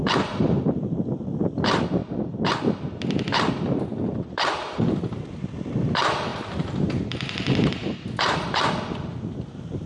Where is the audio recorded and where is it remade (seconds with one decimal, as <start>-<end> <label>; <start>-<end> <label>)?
0.0-2.0 remade; 2.0-4.3 recorded; 4.3-9.9 remade